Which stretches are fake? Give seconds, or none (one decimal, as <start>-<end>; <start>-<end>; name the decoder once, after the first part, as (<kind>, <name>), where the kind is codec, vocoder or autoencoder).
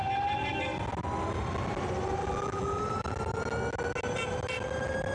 2.2-2.8 (vocoder, BigVGAN v2)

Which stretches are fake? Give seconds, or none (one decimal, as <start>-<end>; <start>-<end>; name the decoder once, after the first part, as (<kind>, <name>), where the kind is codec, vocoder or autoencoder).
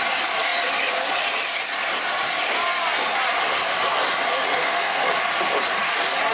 4.6-5.1 (codec, SNAC)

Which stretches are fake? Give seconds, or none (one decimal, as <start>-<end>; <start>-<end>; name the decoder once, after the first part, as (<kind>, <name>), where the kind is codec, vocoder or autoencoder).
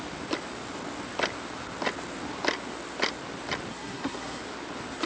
3.7-4.4 (codec, SNAC)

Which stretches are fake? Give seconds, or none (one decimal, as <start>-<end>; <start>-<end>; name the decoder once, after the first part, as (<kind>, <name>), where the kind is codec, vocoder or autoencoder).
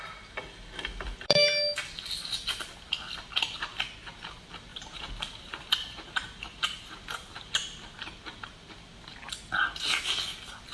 4.7-8.2 (vocoder, BigVGAN v2)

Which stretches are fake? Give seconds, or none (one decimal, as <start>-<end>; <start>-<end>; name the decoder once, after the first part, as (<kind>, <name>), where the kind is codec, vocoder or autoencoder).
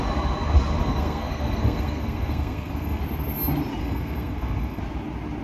0.8-3.0 (codec, SNAC); 3.8-4.8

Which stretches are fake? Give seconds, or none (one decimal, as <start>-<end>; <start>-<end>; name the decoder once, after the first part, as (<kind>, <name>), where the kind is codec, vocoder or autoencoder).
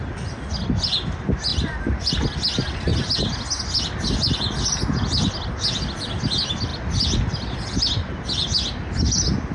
1.5-2.1 (vocoder, BigVGAN v2)